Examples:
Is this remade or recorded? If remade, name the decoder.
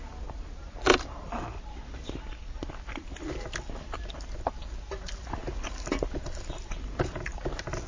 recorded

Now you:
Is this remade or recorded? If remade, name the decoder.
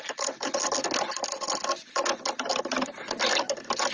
recorded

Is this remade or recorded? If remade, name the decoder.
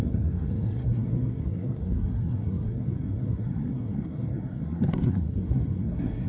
remade, codec, SNAC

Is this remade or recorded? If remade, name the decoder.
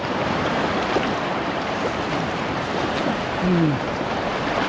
remade, vocoder, BigVGAN v2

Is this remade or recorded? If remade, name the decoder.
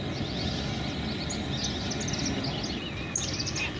recorded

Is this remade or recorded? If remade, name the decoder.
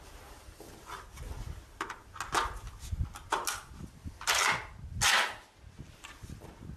recorded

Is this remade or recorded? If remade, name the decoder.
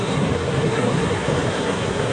remade, codec, SNAC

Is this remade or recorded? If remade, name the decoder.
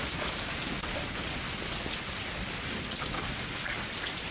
recorded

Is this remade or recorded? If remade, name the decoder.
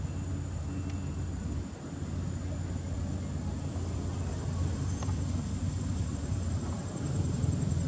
recorded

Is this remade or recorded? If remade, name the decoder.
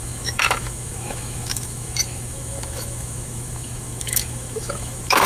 remade, autoencoder, DAC-VAE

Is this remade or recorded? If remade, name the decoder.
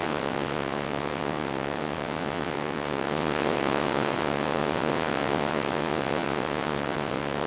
remade, vocoder, WaveNeXt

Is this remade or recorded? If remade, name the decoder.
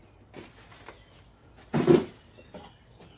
recorded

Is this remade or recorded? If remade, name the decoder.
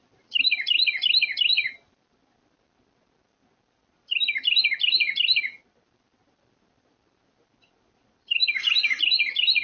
recorded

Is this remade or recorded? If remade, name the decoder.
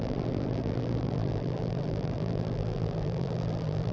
remade, vocoder, BigVGAN v2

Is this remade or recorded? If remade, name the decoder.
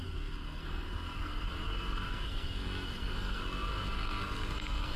remade, codec, SNAC